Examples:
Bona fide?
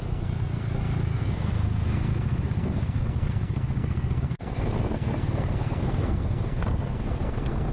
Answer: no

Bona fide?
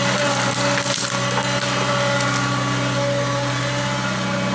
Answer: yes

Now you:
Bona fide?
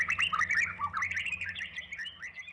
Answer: yes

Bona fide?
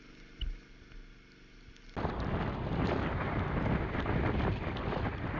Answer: yes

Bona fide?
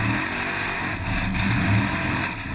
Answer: yes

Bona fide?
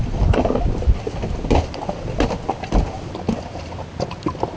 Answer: yes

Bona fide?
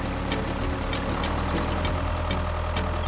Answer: yes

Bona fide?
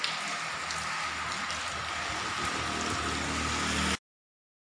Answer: yes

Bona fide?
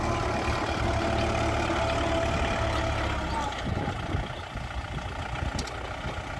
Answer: yes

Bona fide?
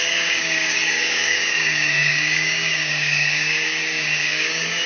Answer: no